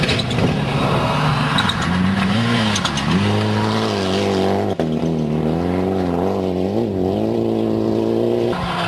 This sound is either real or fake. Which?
real